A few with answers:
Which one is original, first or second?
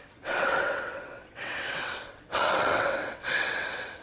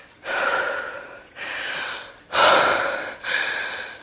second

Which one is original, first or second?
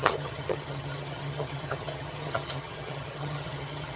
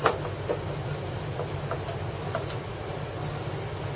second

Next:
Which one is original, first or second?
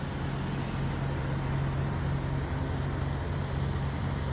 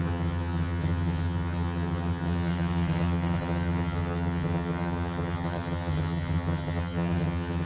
first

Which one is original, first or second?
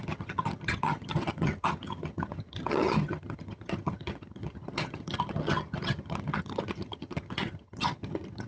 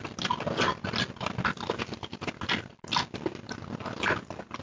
second